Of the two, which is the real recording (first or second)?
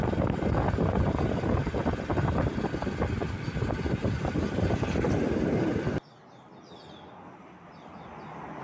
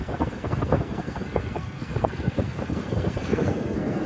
first